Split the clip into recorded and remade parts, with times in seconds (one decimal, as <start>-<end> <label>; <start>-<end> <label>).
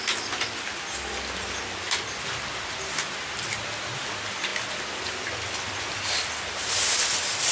0.0-7.5 recorded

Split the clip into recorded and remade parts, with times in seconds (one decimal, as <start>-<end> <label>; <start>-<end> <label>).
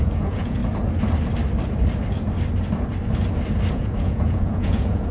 0.0-0.6 remade; 0.6-3.7 recorded; 3.7-5.1 remade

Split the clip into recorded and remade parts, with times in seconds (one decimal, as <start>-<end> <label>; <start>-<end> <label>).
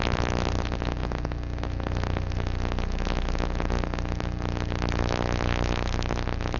0.0-6.6 recorded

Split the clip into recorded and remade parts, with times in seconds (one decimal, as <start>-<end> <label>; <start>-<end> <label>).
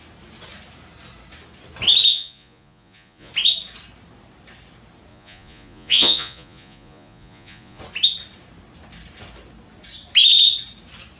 0.0-2.1 recorded; 2.1-3.3 remade; 3.3-5.1 recorded; 5.1-7.8 remade; 7.8-11.2 recorded